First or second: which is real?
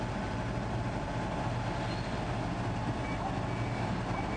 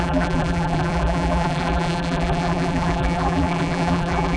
first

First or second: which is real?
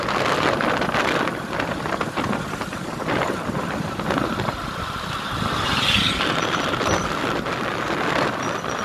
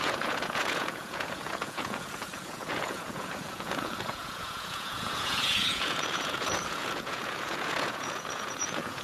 first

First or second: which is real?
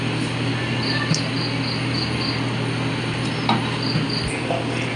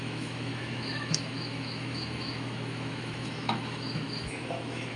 first